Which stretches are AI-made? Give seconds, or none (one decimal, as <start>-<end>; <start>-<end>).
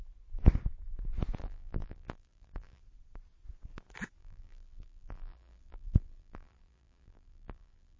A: 1.4-2.8; 4.2-8.0